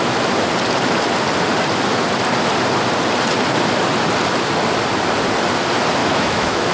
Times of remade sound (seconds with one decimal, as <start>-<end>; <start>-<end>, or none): 6.0-6.7